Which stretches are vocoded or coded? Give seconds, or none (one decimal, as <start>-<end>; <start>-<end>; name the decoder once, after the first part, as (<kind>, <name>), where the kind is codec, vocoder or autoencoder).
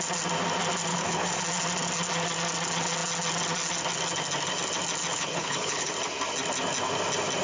0.9-1.4 (codec, HILCodec); 5.1-5.9